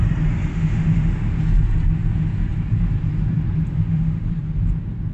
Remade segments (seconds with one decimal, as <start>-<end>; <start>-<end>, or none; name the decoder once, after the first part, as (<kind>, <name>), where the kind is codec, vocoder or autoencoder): 0.5-1.4 (autoencoder, DAC-VAE); 3.7-4.3